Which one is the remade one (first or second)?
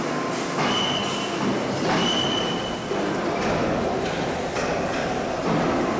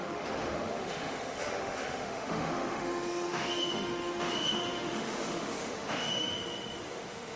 second